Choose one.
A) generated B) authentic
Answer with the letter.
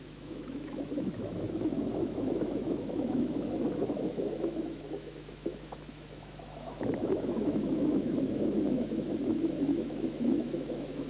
A